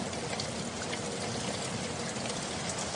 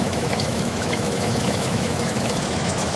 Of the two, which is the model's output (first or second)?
second